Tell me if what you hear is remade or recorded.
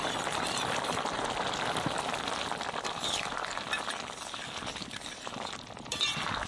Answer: recorded